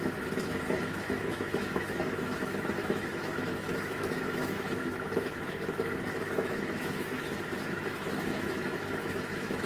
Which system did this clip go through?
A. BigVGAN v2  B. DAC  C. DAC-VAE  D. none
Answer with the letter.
C